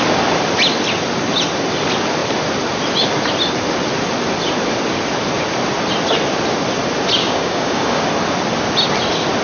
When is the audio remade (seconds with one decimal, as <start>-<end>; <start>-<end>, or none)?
7.2-8.1